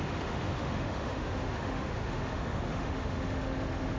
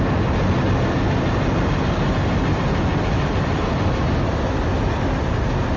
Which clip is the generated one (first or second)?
first